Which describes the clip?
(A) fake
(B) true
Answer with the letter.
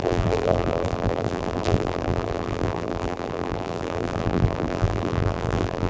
A